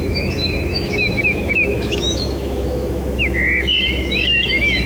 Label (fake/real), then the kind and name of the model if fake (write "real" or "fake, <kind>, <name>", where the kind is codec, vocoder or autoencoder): fake, autoencoder, DAC-VAE